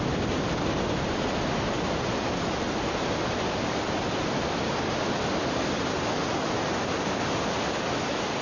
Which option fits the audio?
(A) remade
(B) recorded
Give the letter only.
B